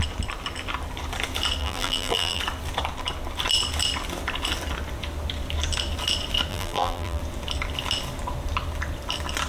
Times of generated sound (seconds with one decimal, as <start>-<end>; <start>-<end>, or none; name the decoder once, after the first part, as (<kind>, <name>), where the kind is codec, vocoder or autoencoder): 1.6-2.4 (vocoder, BigVGAN v2); 6.5-7.2